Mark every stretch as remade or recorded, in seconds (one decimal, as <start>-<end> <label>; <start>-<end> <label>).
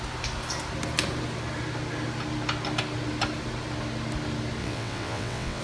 0.0-4.6 recorded; 4.6-5.6 remade